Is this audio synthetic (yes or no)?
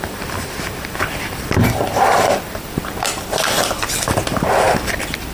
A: yes